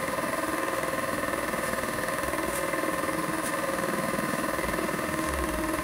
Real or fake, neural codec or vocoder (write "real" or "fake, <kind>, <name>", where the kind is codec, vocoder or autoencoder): fake, autoencoder, DAC-VAE